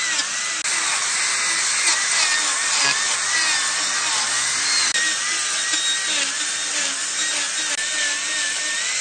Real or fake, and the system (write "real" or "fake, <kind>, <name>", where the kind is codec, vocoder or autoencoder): real